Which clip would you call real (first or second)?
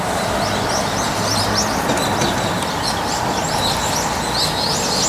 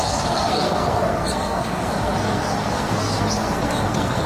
first